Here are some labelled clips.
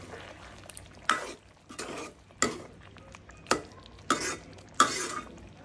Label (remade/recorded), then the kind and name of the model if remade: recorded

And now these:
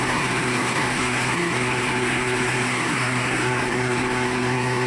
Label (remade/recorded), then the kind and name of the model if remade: remade, codec, SNAC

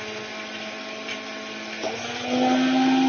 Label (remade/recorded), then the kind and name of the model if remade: recorded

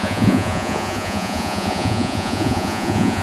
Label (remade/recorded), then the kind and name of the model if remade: remade, vocoder, Vocos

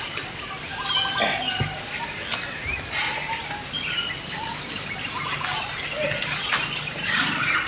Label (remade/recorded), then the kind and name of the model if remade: recorded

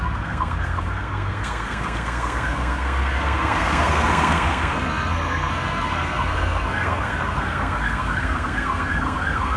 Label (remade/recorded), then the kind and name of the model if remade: remade, codec, SNAC